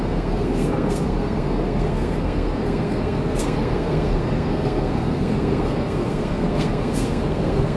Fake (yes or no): yes